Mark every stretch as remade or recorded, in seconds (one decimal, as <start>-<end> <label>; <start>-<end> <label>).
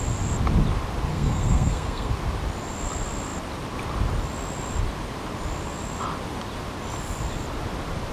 0.0-1.1 recorded; 1.1-2.1 remade; 2.1-8.1 recorded